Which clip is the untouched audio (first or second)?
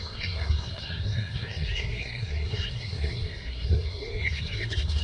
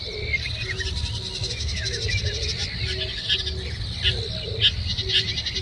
second